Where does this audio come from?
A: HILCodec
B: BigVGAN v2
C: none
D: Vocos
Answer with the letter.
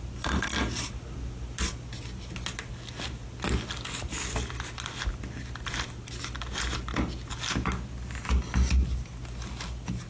C